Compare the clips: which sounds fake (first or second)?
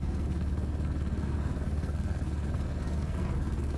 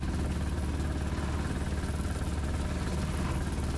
first